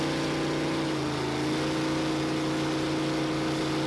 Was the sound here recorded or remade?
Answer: recorded